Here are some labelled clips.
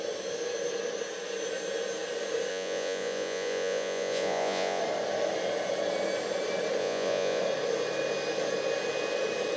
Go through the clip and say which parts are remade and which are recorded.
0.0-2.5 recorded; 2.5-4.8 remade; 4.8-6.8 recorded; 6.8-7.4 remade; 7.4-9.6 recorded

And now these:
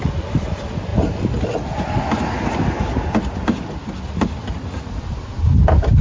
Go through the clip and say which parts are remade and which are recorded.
0.0-6.0 recorded

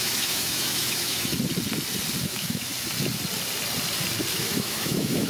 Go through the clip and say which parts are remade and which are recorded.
0.0-1.3 remade; 1.3-2.2 recorded; 2.2-2.7 remade; 2.7-4.3 recorded; 4.3-5.3 remade

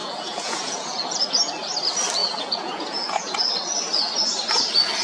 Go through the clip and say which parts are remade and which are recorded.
0.0-1.4 remade; 1.4-2.2 recorded; 2.2-3.4 remade; 3.4-5.0 recorded